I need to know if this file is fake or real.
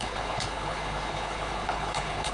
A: fake